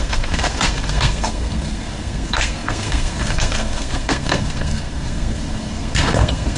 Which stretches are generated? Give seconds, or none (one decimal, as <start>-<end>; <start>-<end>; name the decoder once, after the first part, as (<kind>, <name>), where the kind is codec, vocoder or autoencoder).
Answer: 0.0-6.6 (codec, SNAC)